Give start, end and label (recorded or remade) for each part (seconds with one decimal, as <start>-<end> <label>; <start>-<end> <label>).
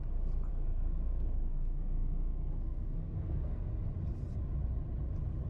0.0-0.5 recorded; 0.5-3.7 remade; 3.7-5.5 recorded